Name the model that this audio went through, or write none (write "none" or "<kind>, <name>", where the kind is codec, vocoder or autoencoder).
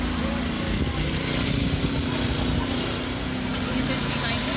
none